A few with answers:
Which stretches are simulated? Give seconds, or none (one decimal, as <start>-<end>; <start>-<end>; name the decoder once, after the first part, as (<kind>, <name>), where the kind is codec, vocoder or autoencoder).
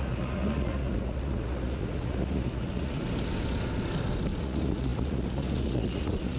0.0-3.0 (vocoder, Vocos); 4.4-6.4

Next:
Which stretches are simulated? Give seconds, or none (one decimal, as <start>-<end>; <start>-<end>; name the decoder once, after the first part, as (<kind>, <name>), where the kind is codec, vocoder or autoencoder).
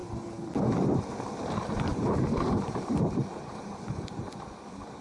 1.9-4.3 (vocoder, BigVGAN v2)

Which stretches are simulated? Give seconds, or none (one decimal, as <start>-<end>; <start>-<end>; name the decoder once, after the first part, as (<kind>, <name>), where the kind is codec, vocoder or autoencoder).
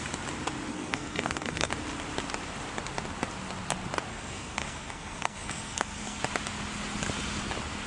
0.7-1.7 (codec, SNAC); 4.1-6.2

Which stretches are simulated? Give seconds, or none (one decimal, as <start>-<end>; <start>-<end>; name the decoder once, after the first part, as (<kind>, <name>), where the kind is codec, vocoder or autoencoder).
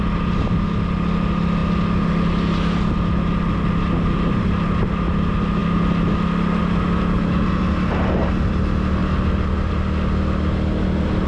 none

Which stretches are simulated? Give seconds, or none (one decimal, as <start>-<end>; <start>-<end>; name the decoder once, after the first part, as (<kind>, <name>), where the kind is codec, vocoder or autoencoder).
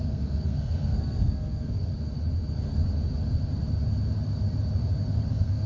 0.0-1.9 (codec, SNAC); 5.3-5.7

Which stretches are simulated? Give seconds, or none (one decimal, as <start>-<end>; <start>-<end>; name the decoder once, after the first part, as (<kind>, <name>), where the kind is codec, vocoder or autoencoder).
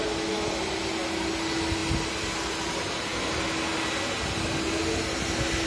none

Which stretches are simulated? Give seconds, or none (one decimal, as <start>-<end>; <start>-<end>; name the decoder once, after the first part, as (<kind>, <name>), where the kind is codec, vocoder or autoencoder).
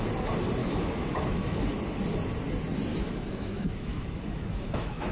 0.6-1.6 (autoencoder, DAC-VAE); 2.9-5.1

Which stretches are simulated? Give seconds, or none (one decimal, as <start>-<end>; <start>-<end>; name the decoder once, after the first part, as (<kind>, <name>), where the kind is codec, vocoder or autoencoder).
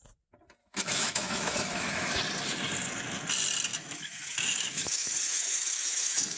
0.6-2.2 (autoencoder, DAC-VAE); 3.7-6.4